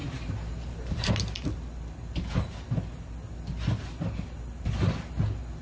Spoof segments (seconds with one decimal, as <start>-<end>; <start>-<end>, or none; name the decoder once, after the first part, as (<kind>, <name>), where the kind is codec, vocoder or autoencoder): none